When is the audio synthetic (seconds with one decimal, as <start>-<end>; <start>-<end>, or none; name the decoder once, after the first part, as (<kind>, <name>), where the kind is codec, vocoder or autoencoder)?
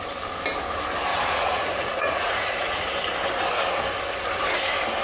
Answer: 1.1-2.9 (vocoder, Vocos)